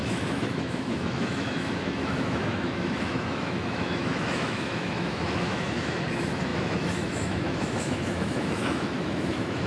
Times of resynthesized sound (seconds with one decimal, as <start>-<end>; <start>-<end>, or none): 0.0-9.7